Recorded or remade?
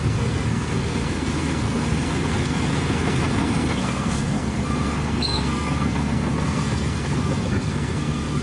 remade